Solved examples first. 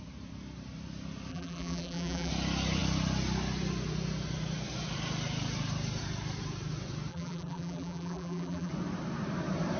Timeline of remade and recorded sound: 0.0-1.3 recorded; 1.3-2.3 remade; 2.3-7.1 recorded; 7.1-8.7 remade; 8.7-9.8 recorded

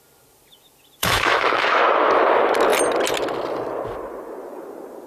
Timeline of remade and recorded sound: 0.0-1.0 recorded; 1.0-1.8 remade; 1.8-5.1 recorded

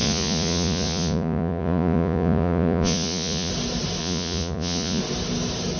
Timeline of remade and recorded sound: 0.0-3.5 remade; 3.5-4.0 recorded; 4.0-5.0 remade; 5.0-5.8 recorded

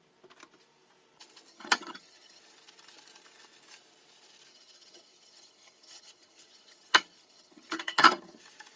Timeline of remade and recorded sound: 0.0-1.5 recorded; 1.5-2.4 remade; 2.4-4.5 recorded; 4.5-8.4 remade; 8.4-8.8 recorded